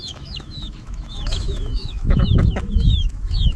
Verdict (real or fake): fake